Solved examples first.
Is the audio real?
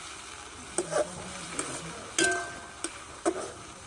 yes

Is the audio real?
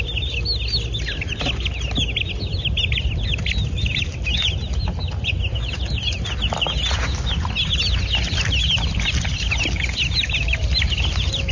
yes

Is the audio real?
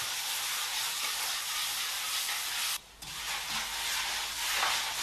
yes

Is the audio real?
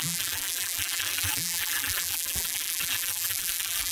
no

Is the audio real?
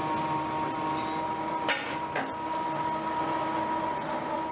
yes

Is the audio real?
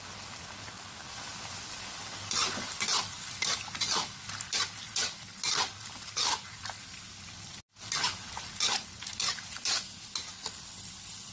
yes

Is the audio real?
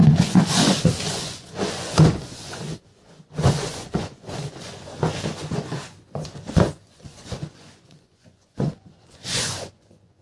no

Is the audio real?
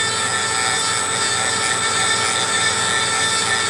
yes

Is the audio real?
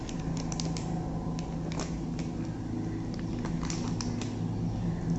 yes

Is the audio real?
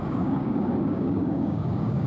no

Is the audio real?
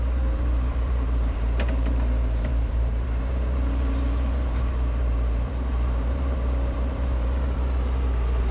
no